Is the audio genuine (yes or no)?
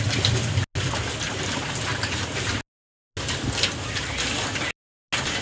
yes